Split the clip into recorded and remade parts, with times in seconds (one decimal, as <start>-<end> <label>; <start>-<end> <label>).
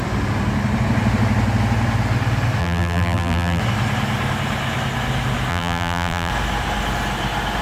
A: 0.0-2.6 recorded; 2.6-3.6 remade; 3.6-5.5 recorded; 5.5-6.3 remade; 6.3-7.6 recorded